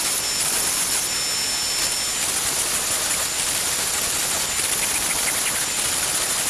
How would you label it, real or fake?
real